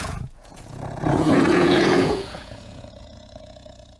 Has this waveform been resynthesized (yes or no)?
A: yes